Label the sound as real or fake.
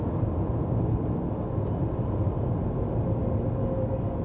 real